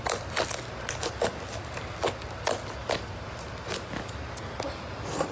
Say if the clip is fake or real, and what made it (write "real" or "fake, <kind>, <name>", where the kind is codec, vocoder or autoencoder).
real